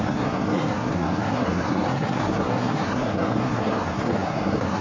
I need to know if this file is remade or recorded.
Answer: remade